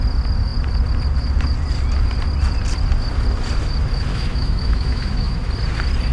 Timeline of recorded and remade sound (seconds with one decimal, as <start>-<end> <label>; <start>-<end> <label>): 0.0-4.1 recorded; 4.1-5.5 remade; 5.5-6.1 recorded